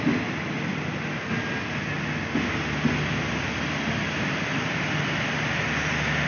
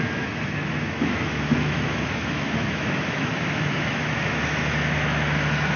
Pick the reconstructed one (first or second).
second